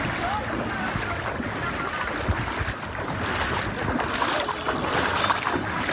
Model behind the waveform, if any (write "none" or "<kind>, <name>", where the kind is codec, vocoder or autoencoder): none